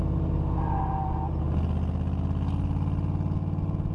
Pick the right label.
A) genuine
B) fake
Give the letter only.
A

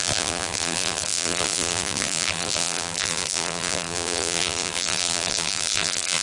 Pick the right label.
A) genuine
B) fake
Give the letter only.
B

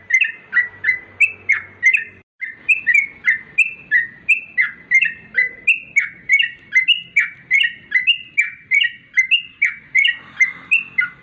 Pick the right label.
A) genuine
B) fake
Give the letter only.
A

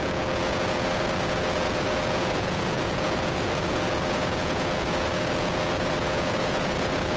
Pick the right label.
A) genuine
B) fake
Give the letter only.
B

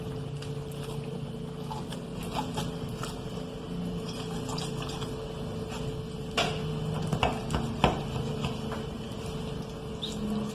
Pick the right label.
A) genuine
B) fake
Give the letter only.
A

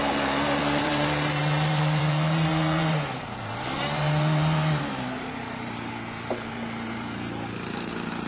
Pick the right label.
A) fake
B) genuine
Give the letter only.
A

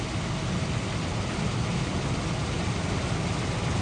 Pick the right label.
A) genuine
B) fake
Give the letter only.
A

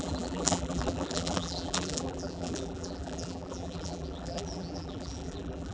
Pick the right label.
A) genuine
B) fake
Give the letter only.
B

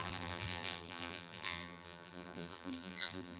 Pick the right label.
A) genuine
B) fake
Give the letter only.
B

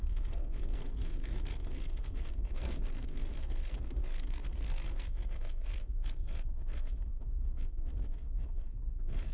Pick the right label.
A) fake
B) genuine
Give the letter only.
A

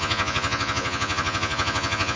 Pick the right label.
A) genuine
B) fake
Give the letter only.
B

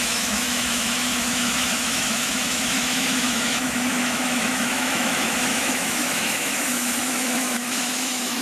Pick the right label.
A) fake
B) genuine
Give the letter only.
A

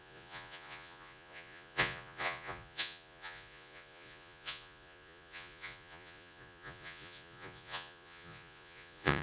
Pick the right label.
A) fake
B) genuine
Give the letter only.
A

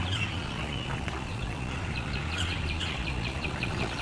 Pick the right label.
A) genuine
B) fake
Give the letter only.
B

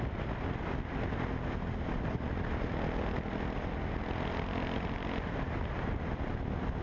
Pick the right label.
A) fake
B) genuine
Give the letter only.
B